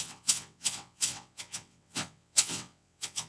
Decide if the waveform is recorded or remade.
remade